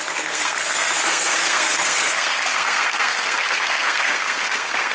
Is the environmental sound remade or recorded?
remade